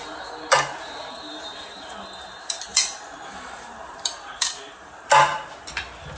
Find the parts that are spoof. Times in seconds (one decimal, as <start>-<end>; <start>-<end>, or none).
2.7-5.1